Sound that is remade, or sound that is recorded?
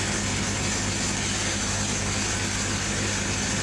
recorded